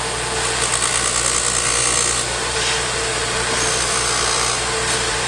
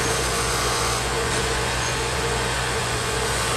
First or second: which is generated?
second